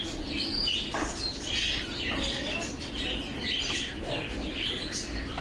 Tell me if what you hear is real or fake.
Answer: real